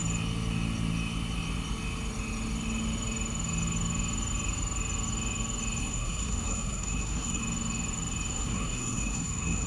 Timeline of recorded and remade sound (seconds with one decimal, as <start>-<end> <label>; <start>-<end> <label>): 0.0-5.8 recorded; 5.8-7.4 remade; 7.4-8.3 recorded; 8.3-9.7 remade

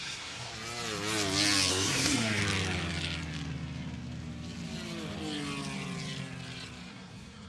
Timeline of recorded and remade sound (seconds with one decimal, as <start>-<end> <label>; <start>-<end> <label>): 0.0-0.5 remade; 0.5-1.7 recorded; 1.7-2.4 remade; 2.4-6.9 recorded; 6.9-7.5 remade

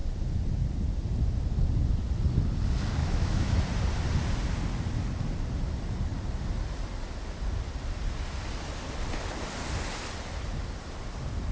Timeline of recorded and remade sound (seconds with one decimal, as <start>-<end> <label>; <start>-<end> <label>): 0.0-3.0 recorded; 3.0-3.6 remade; 3.6-11.5 recorded

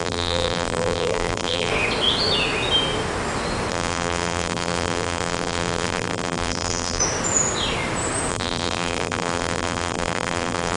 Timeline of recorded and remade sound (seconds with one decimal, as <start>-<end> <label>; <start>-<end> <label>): 0.0-1.7 remade; 1.7-3.7 recorded; 3.7-7.0 remade; 7.0-8.3 recorded; 8.3-10.8 remade

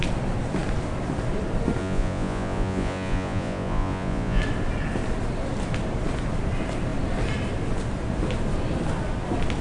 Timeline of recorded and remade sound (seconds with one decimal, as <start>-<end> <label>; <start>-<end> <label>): 0.0-1.8 recorded; 1.8-4.4 remade; 4.4-9.6 recorded

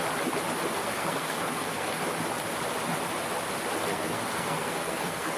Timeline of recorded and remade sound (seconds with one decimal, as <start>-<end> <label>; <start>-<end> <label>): 0.0-0.8 recorded; 0.8-2.0 remade; 2.0-3.9 recorded; 3.9-5.4 remade

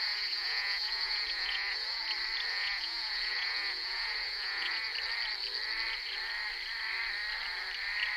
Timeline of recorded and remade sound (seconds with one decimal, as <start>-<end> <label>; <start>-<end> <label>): 0.0-2.0 remade; 2.0-2.5 recorded; 2.5-4.9 remade; 4.9-8.2 recorded

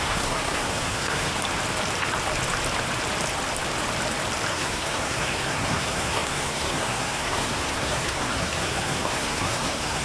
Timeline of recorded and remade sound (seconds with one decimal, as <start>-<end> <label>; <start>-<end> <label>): 0.0-1.3 remade; 1.3-4.5 recorded; 4.5-10.0 remade